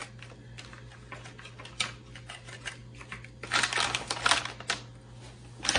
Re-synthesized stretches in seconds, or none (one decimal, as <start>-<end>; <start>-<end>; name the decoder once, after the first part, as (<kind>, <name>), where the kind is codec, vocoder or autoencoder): none